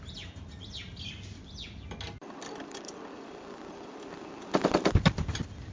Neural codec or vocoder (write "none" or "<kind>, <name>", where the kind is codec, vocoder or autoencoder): none